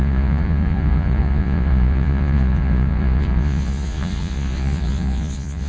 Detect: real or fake fake